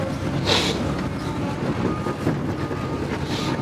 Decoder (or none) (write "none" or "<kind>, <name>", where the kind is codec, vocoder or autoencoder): none